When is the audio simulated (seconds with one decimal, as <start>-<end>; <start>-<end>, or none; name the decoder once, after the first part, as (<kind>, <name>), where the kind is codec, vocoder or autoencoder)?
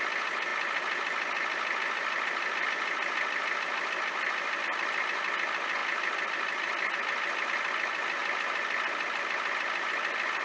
none